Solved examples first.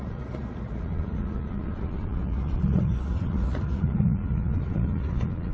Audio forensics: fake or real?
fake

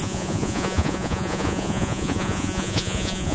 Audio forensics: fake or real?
fake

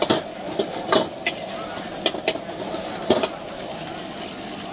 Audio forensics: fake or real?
real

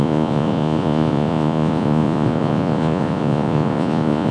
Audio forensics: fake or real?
fake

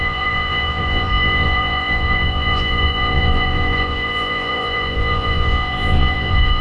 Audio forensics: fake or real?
fake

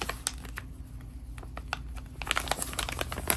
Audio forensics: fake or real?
real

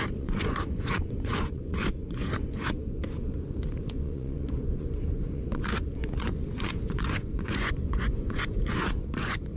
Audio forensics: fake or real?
fake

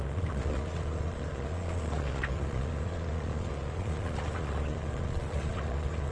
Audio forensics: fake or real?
fake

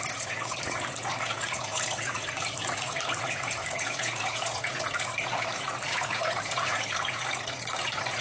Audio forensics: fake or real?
fake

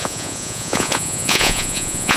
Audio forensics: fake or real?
fake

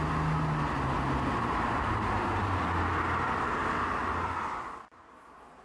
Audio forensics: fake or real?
real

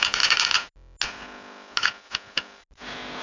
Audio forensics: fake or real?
real